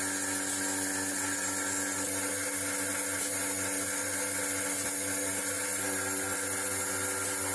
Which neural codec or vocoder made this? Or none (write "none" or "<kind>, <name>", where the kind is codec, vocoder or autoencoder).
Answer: none